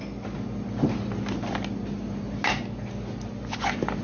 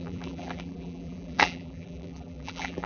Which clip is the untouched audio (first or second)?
first